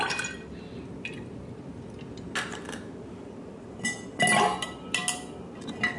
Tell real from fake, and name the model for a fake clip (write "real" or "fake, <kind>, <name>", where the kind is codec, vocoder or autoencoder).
real